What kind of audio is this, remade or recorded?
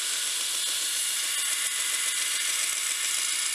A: recorded